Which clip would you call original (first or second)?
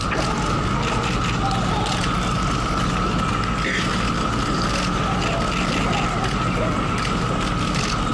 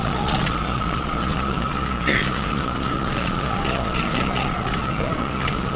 first